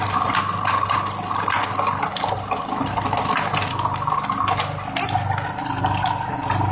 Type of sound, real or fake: real